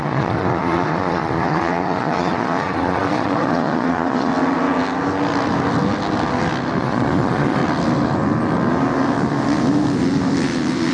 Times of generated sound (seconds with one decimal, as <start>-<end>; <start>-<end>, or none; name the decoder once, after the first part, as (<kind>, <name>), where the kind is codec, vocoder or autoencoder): 0.0-4.3 (vocoder, Vocos); 6.8-7.6